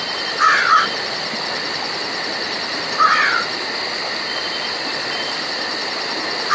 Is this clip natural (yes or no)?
yes